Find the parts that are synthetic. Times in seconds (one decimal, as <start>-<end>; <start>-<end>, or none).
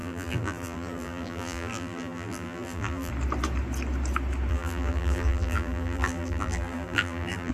0.0-3.1; 4.5-7.5